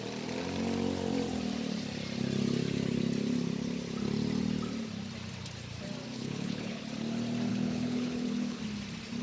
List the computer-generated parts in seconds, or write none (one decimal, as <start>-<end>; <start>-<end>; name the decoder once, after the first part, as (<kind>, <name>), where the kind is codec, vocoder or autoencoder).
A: 6.1-6.8 (codec, HILCodec); 7.5-8.6